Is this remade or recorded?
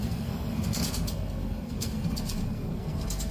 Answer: remade